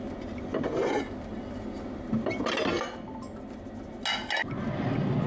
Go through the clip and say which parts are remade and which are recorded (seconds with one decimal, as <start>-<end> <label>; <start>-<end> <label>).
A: 0.0-5.3 recorded